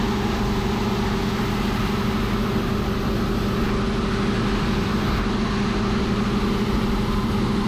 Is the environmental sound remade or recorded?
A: recorded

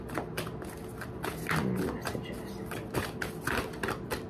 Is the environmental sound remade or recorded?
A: recorded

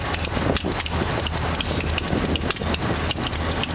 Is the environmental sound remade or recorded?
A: recorded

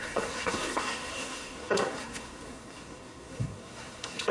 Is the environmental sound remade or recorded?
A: remade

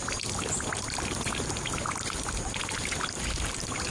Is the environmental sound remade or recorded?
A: recorded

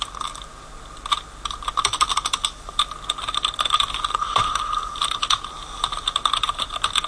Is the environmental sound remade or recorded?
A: recorded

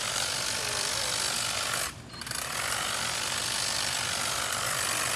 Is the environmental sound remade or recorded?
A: recorded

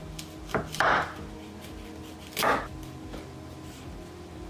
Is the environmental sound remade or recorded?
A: recorded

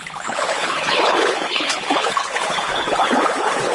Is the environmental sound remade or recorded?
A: remade